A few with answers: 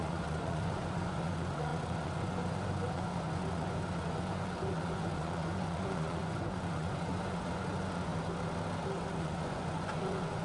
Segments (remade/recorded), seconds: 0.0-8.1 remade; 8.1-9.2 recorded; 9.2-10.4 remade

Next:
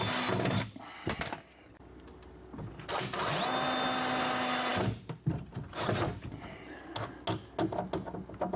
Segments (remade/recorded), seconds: 0.0-8.6 recorded

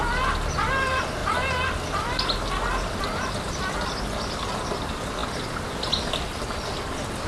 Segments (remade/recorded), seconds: 0.0-7.3 recorded

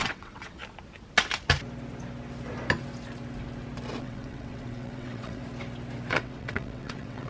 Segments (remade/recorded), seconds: 0.0-0.6 remade; 0.6-4.0 recorded; 4.0-5.4 remade; 5.4-6.1 recorded; 6.1-7.3 remade